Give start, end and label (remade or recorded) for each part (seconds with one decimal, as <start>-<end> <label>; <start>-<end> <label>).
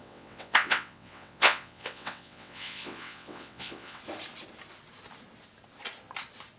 0.0-4.0 remade; 4.0-6.6 recorded